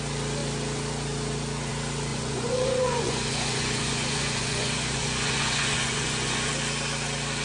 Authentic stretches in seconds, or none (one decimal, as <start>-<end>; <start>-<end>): 0.0-2.1; 6.5-7.4